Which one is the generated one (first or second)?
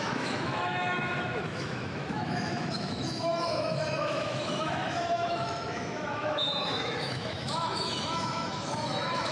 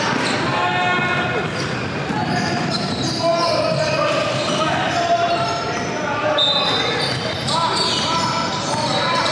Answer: first